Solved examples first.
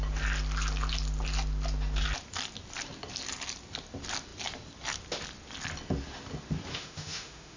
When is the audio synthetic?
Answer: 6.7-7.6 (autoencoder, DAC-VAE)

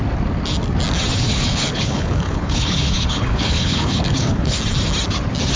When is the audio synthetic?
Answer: 1.2-4.6 (codec, HILCodec)

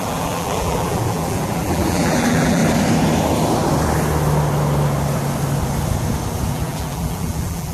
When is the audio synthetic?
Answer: 0.0-2.6 (vocoder, BigVGAN v2); 6.5-7.7

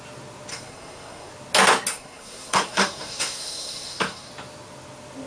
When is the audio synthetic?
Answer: 0.5-1.3 (codec, SNAC); 1.9-4.3